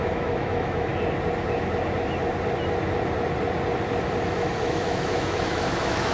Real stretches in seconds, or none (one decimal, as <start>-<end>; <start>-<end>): 0.9-4.3